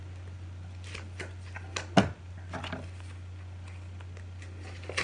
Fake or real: real